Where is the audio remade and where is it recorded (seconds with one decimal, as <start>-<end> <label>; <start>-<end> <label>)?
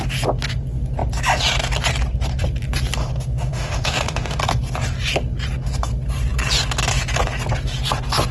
0.0-3.0 recorded; 3.0-4.4 remade; 4.4-8.3 recorded